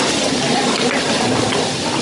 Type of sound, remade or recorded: recorded